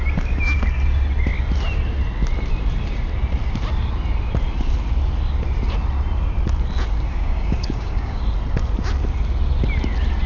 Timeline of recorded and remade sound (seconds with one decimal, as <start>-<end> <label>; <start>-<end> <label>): 0.0-7.1 recorded; 7.1-8.2 remade; 8.2-10.3 recorded